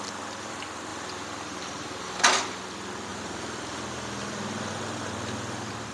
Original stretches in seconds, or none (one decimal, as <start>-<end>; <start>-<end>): 0.0-0.9; 2.2-3.1; 4.8-5.9